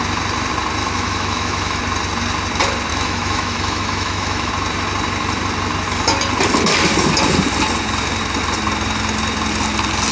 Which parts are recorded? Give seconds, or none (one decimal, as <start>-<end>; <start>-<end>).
0.0-0.8; 1.8-2.9; 4.5-10.1